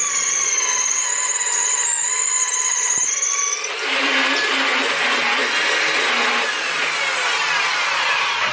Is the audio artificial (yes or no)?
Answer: no